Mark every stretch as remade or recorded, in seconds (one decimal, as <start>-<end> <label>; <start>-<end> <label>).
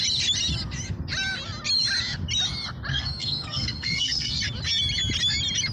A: 0.0-2.9 recorded; 2.9-4.4 remade; 4.4-5.7 recorded